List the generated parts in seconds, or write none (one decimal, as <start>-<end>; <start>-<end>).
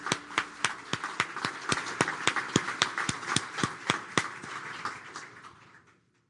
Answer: 0.0-0.9; 1.4-6.3